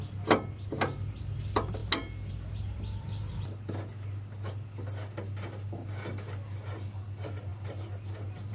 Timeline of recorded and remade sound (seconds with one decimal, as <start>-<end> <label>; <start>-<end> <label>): 0.0-8.5 recorded